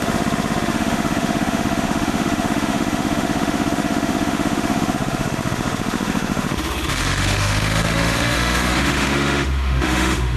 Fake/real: fake